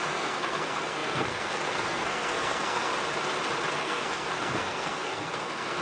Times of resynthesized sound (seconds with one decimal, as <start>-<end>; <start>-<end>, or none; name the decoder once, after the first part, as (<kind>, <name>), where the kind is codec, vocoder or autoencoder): 0.0-2.9 (codec, SNAC); 3.7-5.8